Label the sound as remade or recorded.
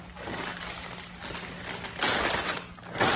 recorded